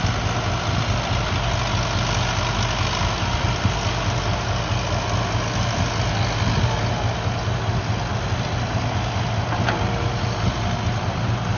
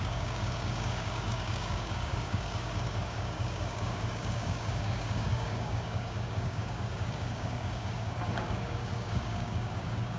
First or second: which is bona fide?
first